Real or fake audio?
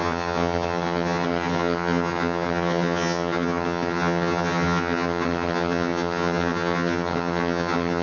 fake